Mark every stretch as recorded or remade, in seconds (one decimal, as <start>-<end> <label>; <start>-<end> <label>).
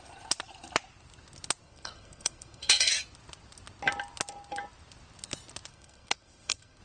0.0-1.6 recorded; 1.6-2.9 remade; 2.9-5.7 recorded; 5.7-6.8 remade